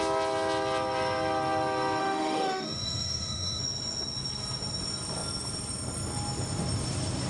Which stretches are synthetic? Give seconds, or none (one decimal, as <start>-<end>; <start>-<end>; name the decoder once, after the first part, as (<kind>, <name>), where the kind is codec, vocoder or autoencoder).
2.0-3.6 (autoencoder, DAC-VAE)